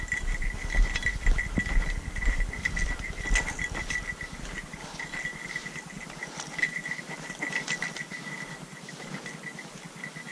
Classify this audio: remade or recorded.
recorded